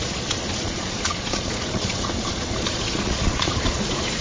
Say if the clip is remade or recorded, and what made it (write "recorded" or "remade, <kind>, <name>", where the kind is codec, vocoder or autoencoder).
remade, vocoder, Vocos